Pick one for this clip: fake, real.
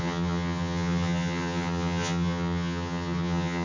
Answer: fake